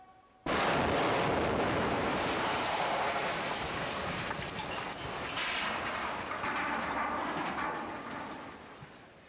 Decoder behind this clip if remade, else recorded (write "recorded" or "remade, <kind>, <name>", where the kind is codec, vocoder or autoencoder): recorded